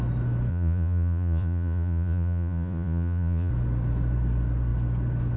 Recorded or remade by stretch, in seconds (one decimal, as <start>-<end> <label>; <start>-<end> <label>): 0.0-0.5 recorded; 0.5-3.5 remade; 3.5-5.4 recorded